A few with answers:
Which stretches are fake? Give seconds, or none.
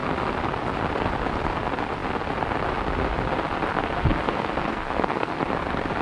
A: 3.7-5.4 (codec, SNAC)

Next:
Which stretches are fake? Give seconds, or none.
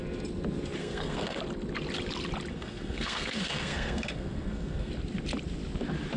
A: 0.8-1.4 (codec, SNAC); 2.5-4.9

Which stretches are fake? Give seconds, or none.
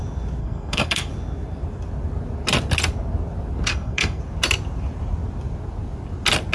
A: 0.4-1.1 (codec, SNAC); 3.7-4.2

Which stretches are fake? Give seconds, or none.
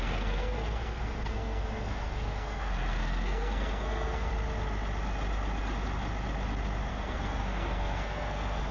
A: 0.0-4.3 (codec, SNAC); 6.9-8.7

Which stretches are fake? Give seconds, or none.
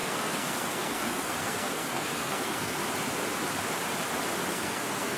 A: 0.0-2.8 (codec, SNAC); 4.5-5.2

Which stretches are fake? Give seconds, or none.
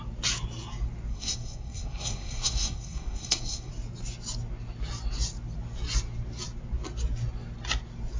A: 1.1-3.7 (codec, SNAC)